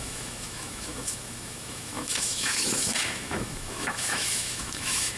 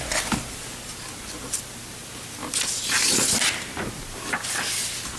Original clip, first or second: second